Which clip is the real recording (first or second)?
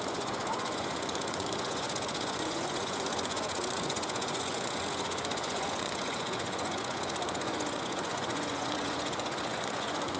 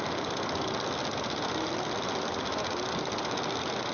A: second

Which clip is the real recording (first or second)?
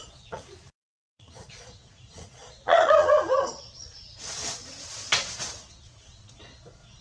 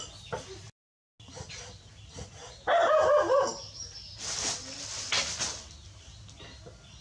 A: second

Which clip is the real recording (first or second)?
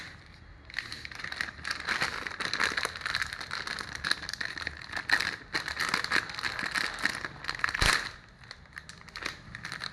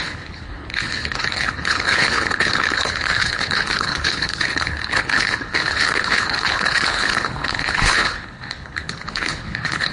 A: first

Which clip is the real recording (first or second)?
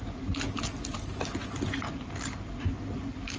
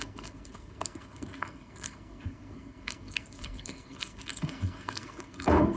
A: first